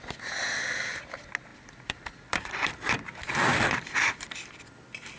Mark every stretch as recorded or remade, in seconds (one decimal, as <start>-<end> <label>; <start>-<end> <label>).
0.0-1.5 recorded; 1.5-4.6 remade; 4.6-5.2 recorded

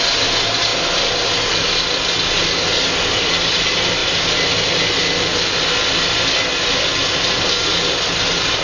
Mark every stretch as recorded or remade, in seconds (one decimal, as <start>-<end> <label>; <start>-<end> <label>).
0.0-8.6 recorded

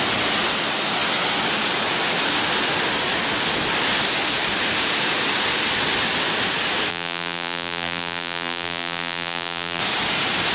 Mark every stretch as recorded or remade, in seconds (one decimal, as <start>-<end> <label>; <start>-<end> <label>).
0.0-6.9 recorded; 6.9-9.8 remade; 9.8-10.5 recorded

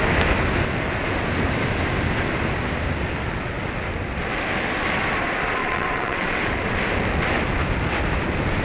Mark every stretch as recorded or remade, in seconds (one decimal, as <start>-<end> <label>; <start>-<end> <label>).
0.0-5.6 recorded; 5.6-6.4 remade; 6.4-8.6 recorded

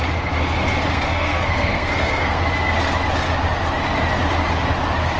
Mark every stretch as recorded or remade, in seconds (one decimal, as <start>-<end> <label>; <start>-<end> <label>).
0.0-0.9 recorded; 0.9-2.4 remade; 2.4-5.2 recorded

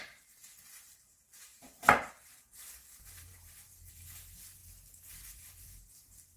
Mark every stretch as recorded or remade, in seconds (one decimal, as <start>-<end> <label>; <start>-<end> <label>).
0.0-4.6 remade; 4.6-5.1 recorded; 5.1-6.4 remade